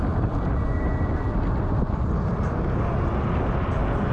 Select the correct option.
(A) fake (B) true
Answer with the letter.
B